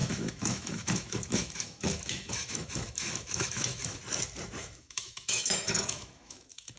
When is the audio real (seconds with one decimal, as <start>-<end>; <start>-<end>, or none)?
4.0-4.6